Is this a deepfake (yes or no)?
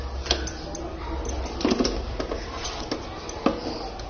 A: no